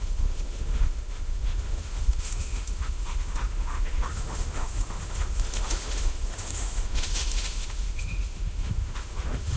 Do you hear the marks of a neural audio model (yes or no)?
yes